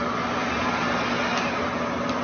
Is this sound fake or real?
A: real